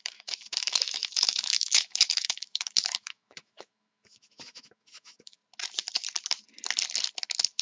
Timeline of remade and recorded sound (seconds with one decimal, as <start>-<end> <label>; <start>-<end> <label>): 0.0-5.4 remade; 5.4-7.6 recorded